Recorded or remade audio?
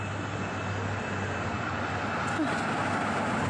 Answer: recorded